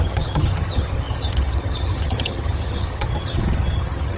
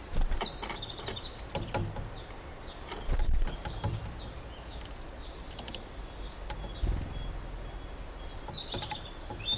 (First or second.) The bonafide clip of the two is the second